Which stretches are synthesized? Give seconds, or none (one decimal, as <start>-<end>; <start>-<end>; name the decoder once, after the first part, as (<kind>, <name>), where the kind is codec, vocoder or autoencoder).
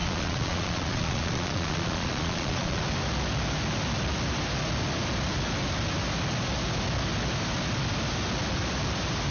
0.0-2.8 (vocoder, Vocos)